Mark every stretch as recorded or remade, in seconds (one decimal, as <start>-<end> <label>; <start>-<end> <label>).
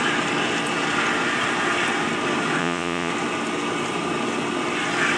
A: 0.0-2.6 recorded; 2.6-3.1 remade; 3.1-5.2 recorded